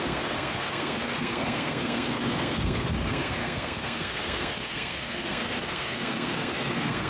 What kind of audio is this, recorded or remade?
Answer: remade